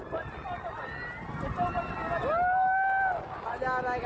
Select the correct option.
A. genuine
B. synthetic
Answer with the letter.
A